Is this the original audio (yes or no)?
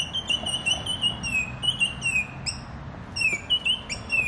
yes